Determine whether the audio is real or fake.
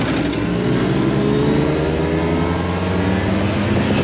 real